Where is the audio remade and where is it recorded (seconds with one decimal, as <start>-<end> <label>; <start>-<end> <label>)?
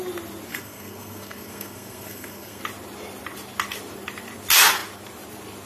0.0-0.5 recorded; 0.5-2.6 remade; 2.6-5.7 recorded